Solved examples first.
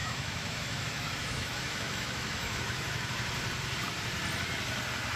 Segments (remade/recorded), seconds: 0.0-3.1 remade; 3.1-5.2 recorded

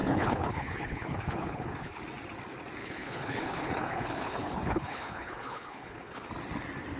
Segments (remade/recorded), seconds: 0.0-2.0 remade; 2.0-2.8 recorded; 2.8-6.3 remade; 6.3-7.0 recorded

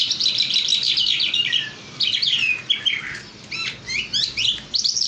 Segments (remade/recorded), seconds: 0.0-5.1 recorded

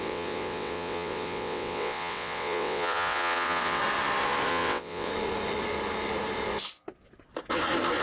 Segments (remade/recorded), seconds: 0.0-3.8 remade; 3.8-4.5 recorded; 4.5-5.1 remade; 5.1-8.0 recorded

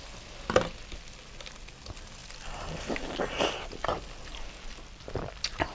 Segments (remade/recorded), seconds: 0.0-5.7 recorded